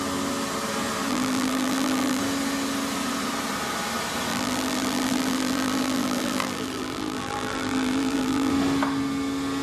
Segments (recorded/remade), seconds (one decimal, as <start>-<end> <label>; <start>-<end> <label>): 0.0-1.1 recorded; 1.1-2.2 remade; 2.2-4.3 recorded; 4.3-8.5 remade; 8.5-9.6 recorded